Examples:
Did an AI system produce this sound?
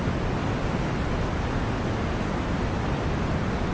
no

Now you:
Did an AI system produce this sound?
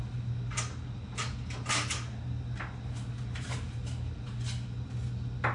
no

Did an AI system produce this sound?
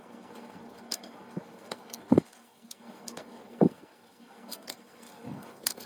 yes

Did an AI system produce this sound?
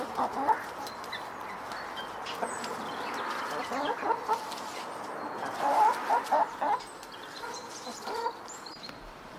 yes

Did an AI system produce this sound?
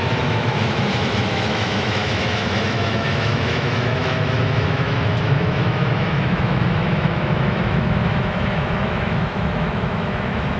yes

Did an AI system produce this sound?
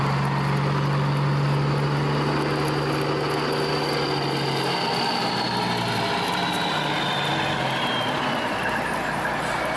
no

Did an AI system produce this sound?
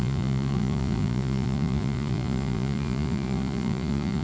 yes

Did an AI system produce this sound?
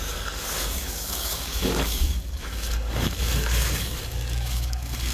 yes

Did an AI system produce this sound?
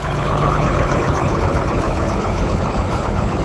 yes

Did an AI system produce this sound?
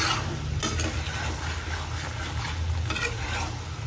no